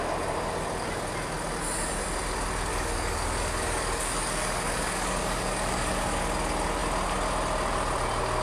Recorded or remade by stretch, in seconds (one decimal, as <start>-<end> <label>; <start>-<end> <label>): 0.0-2.7 recorded; 2.7-6.2 remade; 6.2-8.4 recorded